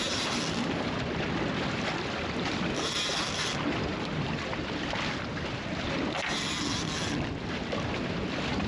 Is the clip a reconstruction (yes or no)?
yes